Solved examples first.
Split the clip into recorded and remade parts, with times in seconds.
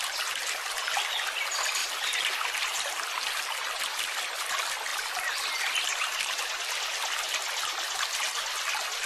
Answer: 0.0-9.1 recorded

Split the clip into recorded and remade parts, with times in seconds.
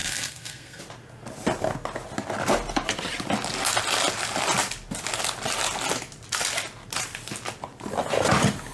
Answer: 0.0-0.8 remade; 0.8-8.7 recorded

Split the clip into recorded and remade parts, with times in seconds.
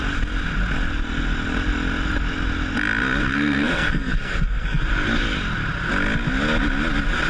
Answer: 0.0-3.2 recorded; 3.2-4.8 remade; 4.8-7.3 recorded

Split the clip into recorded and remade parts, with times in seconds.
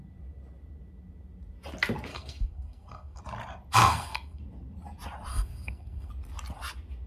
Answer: 0.0-2.1 recorded; 2.1-3.2 remade; 3.2-3.8 recorded; 3.8-4.4 remade; 4.4-5.3 recorded; 5.3-6.1 remade; 6.1-7.1 recorded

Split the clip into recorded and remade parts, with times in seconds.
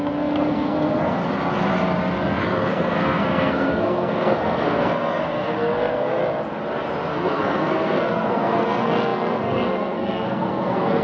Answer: 0.0-1.2 remade; 1.2-2.4 recorded; 2.4-6.2 remade; 6.2-7.1 recorded; 7.1-11.0 remade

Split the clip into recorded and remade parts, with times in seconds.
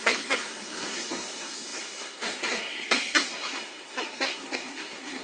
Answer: 0.0-5.2 remade